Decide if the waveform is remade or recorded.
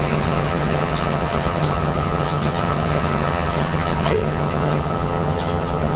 remade